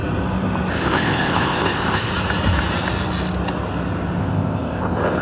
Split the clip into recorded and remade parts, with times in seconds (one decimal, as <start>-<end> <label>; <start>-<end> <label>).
0.0-0.7 recorded; 0.7-2.1 remade; 2.1-4.2 recorded; 4.2-5.2 remade